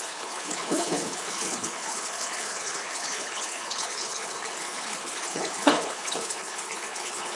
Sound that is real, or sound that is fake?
fake